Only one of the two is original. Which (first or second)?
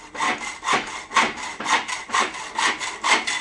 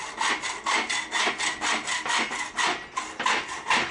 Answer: second